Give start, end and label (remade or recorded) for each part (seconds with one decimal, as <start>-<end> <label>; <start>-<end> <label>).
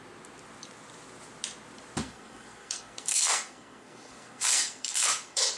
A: 0.0-2.0 recorded; 2.0-5.6 remade